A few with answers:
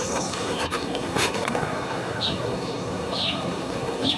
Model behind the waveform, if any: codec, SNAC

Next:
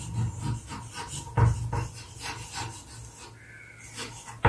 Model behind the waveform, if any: none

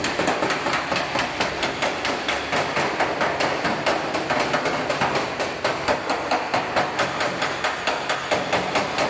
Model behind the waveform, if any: vocoder, BigVGAN v2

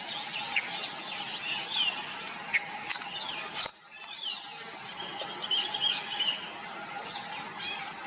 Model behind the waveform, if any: none